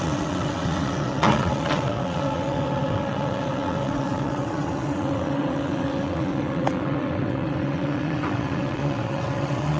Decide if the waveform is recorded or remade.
remade